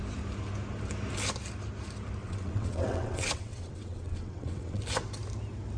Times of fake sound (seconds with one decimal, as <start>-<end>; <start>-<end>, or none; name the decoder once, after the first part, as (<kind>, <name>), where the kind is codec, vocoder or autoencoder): 2.2-4.8 (vocoder, WaveNeXt)